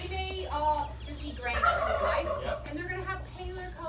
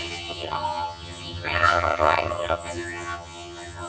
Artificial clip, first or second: second